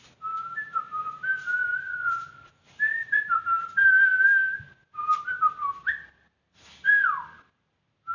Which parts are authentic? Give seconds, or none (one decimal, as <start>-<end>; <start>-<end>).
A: 0.0-1.9; 2.5-8.1